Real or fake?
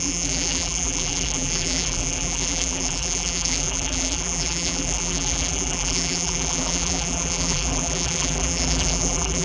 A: fake